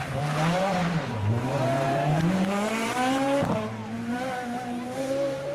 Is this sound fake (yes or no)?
yes